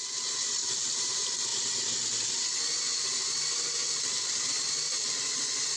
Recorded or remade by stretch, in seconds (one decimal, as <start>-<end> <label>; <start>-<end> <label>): 0.0-0.6 recorded; 0.6-1.1 remade; 1.1-5.8 recorded